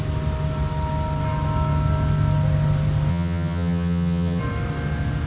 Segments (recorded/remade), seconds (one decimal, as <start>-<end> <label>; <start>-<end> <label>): 0.0-3.1 recorded; 3.1-4.4 remade; 4.4-5.3 recorded